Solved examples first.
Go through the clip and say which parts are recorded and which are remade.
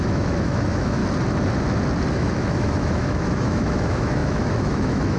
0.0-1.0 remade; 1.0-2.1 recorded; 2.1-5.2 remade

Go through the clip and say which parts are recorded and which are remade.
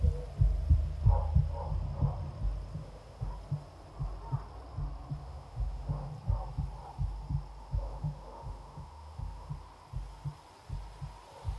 0.0-2.8 recorded; 2.8-3.3 remade; 3.3-5.2 recorded; 5.2-6.1 remade; 6.1-7.6 recorded; 7.6-9.5 remade; 9.5-11.6 recorded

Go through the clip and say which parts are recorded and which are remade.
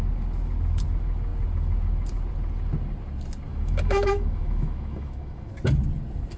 0.0-3.5 recorded; 3.5-5.5 remade; 5.5-6.4 recorded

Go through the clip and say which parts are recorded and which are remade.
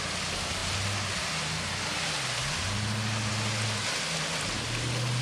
0.0-5.2 recorded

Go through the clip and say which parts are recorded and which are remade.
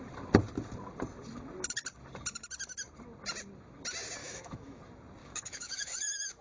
0.0-4.2 recorded; 4.2-4.8 remade; 4.8-5.2 recorded; 5.2-6.4 remade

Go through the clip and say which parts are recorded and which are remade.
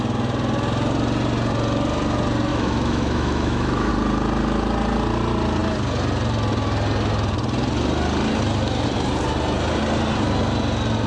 0.0-2.5 recorded; 2.5-3.9 remade; 3.9-11.1 recorded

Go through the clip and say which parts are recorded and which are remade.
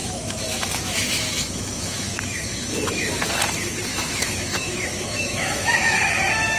0.0-3.1 remade; 3.1-3.9 recorded; 3.9-6.1 remade; 6.1-6.6 recorded